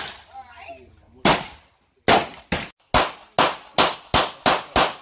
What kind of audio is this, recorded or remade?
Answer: recorded